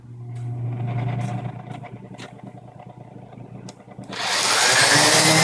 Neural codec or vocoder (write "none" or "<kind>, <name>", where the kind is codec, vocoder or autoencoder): none